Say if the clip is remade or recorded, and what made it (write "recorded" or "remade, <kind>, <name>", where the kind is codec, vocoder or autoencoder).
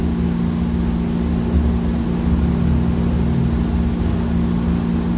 recorded